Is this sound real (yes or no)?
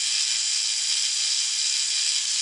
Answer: yes